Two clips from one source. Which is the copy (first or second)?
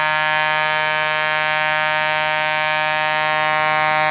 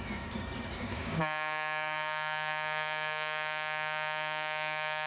second